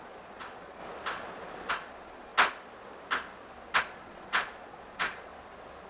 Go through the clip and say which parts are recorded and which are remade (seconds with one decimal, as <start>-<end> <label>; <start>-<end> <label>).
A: 0.0-0.8 remade; 0.8-1.7 recorded; 1.7-2.3 remade; 2.3-3.8 recorded; 3.8-5.3 remade; 5.3-5.9 recorded